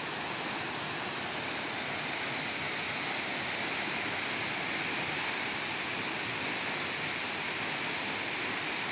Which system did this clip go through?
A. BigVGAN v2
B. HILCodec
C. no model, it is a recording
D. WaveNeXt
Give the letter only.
C